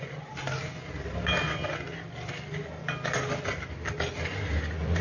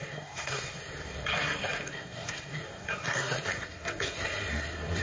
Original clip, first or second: first